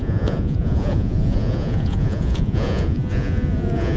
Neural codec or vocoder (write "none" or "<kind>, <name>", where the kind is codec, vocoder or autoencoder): vocoder, Vocos